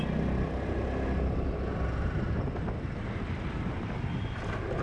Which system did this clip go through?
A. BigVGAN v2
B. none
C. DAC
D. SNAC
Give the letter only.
B